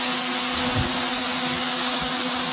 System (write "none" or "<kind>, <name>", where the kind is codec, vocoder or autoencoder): none